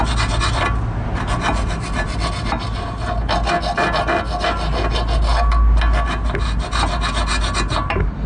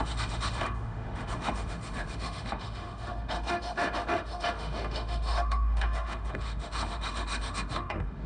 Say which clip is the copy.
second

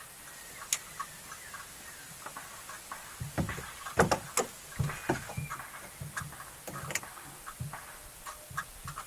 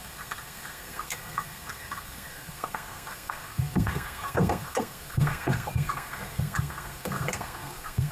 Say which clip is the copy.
second